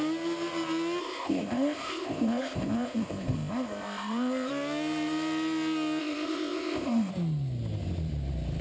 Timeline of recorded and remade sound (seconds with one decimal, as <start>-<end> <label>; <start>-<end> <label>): 0.0-1.0 recorded; 1.0-4.5 remade; 4.5-6.0 recorded; 6.0-7.1 remade; 7.1-8.6 recorded

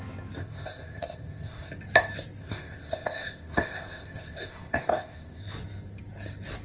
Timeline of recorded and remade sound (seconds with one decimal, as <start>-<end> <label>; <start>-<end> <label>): 0.0-0.4 recorded; 0.4-1.7 remade; 1.7-2.4 recorded; 2.4-5.4 remade; 5.4-6.6 recorded

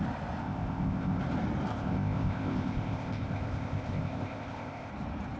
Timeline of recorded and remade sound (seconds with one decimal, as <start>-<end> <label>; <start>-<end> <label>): 0.0-0.4 recorded; 0.4-1.2 remade; 1.2-1.7 recorded; 1.7-4.9 remade; 4.9-5.4 recorded

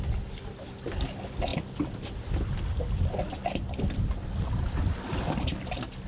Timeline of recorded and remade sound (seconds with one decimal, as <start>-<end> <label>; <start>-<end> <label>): 0.0-6.1 recorded

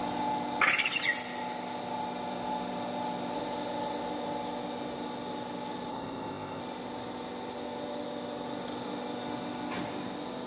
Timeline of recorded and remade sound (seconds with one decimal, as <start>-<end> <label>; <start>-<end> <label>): 0.0-5.9 recorded; 5.9-6.6 remade; 6.6-10.5 recorded

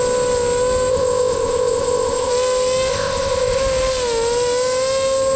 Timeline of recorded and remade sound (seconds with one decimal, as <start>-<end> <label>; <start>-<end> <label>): 0.0-0.9 recorded; 0.9-2.3 remade; 2.3-2.9 recorded; 2.9-3.6 remade; 3.6-5.4 recorded